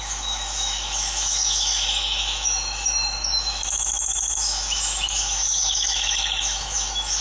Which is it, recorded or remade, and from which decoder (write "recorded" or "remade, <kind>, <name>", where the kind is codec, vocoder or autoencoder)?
remade, autoencoder, DAC-VAE